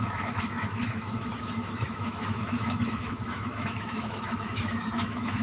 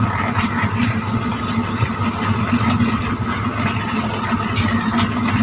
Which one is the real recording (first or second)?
second